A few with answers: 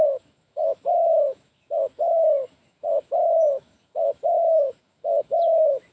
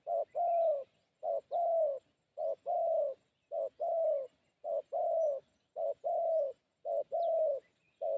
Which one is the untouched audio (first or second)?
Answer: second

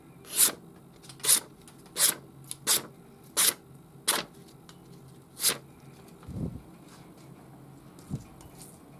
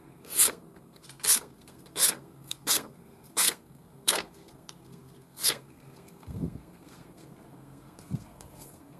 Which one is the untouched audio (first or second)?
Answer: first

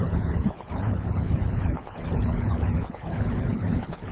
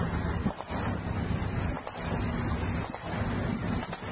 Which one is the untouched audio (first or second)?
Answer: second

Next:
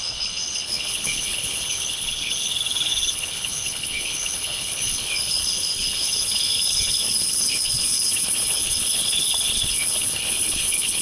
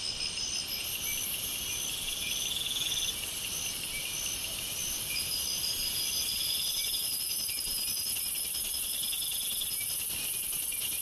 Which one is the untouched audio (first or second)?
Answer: second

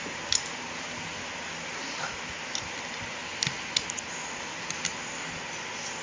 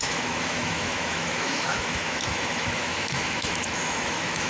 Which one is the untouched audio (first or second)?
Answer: first